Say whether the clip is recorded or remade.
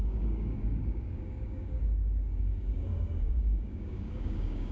remade